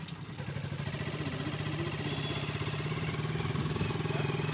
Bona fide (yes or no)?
yes